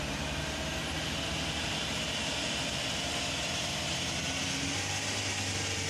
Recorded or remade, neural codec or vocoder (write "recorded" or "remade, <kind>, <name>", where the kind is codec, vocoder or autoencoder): recorded